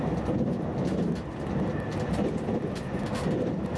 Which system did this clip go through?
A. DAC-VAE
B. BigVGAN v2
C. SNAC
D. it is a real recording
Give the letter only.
D